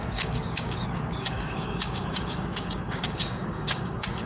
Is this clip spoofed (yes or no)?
yes